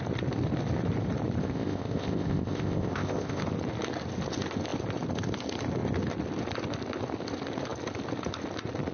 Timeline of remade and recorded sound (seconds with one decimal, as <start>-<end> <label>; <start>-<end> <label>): 0.0-1.4 recorded; 1.4-3.4 remade; 3.4-8.9 recorded